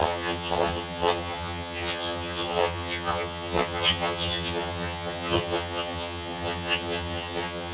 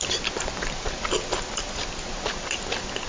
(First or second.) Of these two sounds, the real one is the second